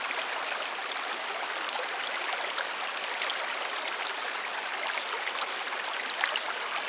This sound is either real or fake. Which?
real